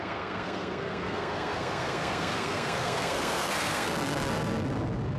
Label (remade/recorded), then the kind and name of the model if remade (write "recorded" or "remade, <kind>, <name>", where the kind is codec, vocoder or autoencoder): remade, codec, SNAC